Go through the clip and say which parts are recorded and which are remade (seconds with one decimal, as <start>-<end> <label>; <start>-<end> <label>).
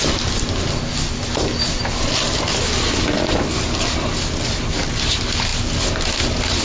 0.0-6.6 recorded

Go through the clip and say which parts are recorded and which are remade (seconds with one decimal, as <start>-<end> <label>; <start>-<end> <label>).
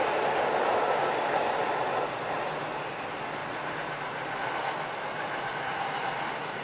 0.0-6.6 recorded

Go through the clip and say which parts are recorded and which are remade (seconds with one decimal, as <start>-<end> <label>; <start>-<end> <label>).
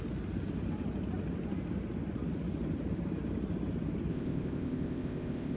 0.0-4.1 recorded; 4.1-5.6 remade